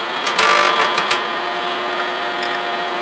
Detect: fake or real real